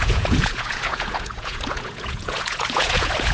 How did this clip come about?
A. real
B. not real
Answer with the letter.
B